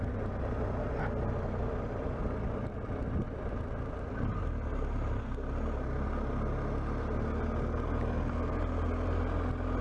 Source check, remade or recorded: recorded